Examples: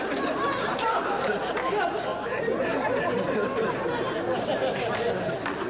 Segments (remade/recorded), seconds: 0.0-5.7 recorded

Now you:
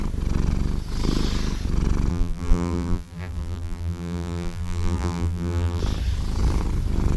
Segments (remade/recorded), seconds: 0.0-2.1 recorded; 2.1-5.8 remade; 5.8-7.2 recorded

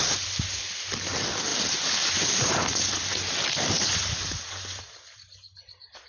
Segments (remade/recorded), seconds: 0.0-1.5 recorded; 1.5-2.5 remade; 2.5-6.1 recorded

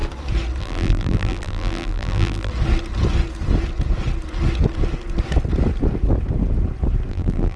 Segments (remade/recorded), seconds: 0.0-0.6 recorded; 0.6-2.5 remade; 2.5-7.1 recorded; 7.1-7.6 remade